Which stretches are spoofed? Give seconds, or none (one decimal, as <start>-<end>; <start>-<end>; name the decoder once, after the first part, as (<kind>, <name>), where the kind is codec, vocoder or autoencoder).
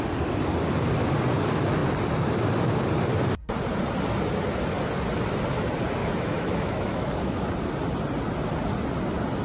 6.0-7.5 (autoencoder, DAC-VAE)